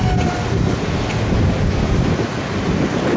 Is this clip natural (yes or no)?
yes